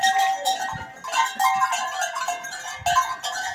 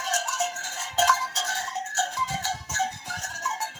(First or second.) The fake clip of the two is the second